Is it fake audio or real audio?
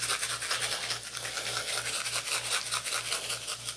real